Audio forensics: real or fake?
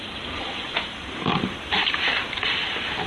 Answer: fake